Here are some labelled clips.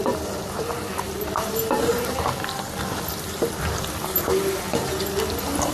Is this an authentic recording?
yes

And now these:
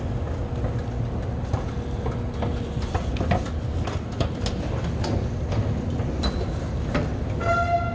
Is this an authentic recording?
yes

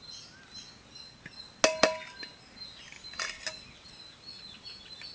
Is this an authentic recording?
yes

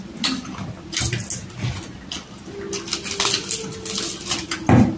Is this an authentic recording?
yes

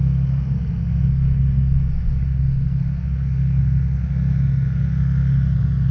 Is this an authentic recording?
no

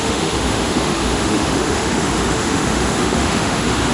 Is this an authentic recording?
no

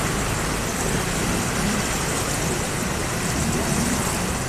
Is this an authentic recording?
yes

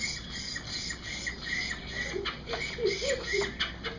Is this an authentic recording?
yes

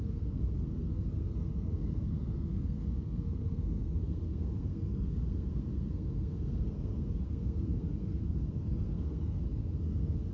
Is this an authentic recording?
no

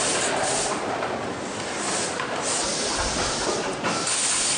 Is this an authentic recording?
yes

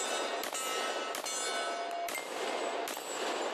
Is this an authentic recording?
yes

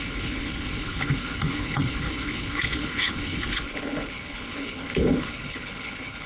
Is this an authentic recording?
no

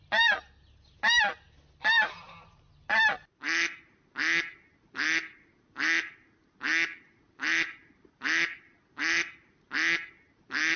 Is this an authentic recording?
yes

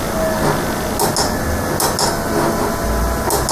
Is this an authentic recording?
yes